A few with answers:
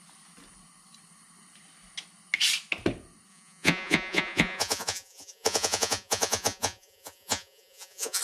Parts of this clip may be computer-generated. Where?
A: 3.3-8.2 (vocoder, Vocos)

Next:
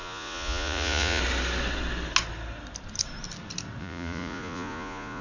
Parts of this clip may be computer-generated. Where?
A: 0.0-1.2 (vocoder, Vocos); 3.8-5.2